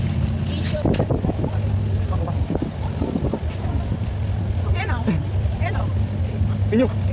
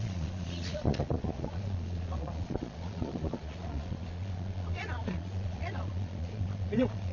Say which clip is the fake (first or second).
second